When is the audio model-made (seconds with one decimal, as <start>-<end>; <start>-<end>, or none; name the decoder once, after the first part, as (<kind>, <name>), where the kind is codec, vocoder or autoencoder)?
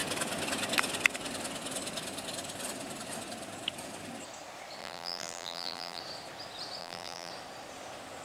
4.8-6.0 (vocoder, BigVGAN v2); 6.8-7.3